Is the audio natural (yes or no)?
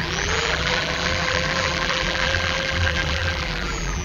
no